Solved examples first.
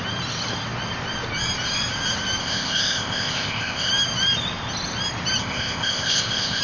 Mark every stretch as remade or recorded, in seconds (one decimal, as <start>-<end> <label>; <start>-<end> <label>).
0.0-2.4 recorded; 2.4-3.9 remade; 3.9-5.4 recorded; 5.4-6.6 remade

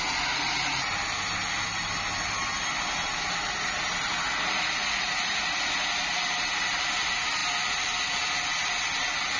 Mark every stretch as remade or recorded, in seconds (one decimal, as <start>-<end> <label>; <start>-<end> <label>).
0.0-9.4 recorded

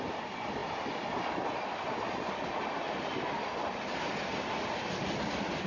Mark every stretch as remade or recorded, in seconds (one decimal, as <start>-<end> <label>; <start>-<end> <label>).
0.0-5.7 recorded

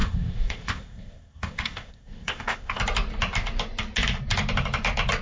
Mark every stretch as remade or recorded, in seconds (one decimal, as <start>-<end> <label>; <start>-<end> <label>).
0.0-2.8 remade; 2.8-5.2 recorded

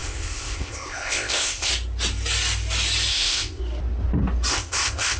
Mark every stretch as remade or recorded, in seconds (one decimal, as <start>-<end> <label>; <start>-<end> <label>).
0.0-1.7 remade; 1.7-3.1 recorded; 3.1-3.6 remade; 3.6-4.5 recorded; 4.5-5.2 remade